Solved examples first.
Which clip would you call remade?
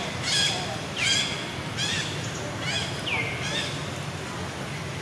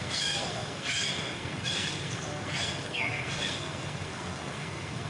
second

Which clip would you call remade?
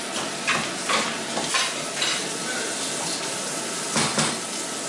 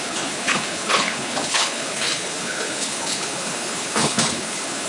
second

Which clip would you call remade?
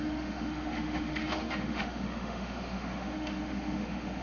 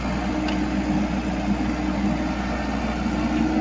first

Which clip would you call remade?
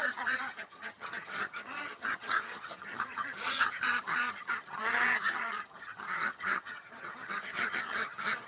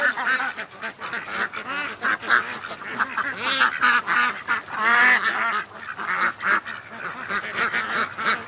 first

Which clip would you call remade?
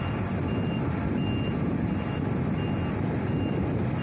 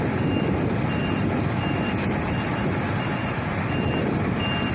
second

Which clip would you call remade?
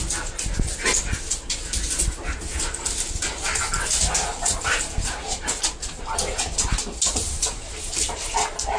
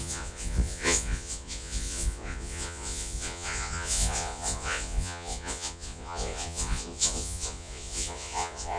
second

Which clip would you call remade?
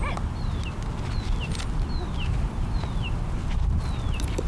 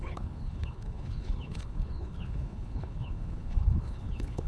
second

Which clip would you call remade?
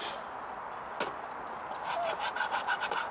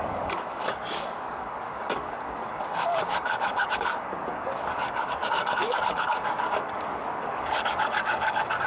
second